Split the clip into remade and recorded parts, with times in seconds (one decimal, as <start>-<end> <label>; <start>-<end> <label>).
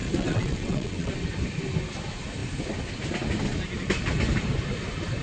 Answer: 0.0-1.1 remade; 1.1-5.2 recorded